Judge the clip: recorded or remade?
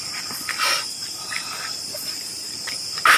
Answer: remade